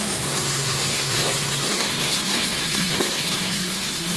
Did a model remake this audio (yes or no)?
yes